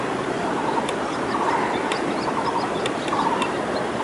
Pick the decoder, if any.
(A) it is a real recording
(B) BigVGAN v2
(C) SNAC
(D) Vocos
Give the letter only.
A